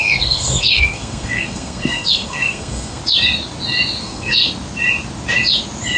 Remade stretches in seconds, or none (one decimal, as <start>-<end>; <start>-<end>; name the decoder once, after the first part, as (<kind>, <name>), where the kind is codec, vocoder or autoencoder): 0.0-3.0 (codec, SNAC); 4.0-4.4